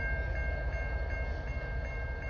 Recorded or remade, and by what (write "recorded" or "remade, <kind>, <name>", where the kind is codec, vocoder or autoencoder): recorded